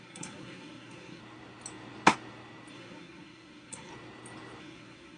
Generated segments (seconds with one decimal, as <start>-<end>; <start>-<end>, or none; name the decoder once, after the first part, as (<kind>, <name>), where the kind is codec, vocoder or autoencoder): 0.0-1.2 (codec, SNAC); 2.7-3.9; 4.6-5.2